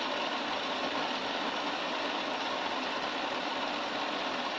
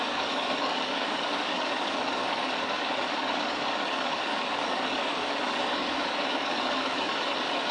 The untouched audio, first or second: first